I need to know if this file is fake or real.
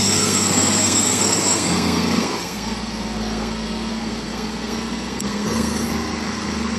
fake